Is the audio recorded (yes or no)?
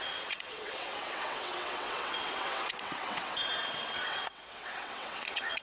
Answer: no